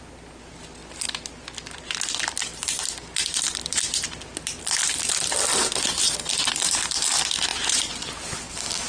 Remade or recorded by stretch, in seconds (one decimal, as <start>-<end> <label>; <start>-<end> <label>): 0.0-7.5 recorded; 7.5-8.1 remade; 8.1-8.9 recorded